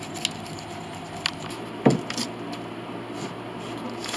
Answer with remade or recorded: recorded